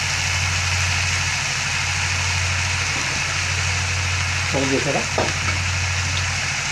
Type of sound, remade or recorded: recorded